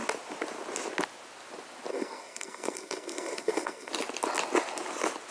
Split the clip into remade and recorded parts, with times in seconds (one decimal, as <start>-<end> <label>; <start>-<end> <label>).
0.0-1.9 recorded; 1.9-3.9 remade; 3.9-5.3 recorded